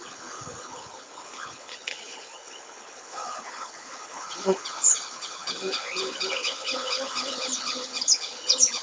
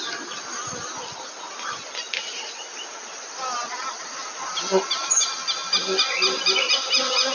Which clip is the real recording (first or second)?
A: second